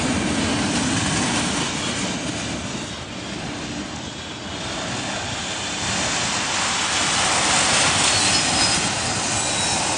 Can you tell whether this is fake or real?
real